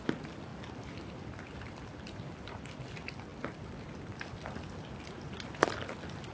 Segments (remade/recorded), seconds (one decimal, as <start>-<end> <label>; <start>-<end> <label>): 0.0-6.3 remade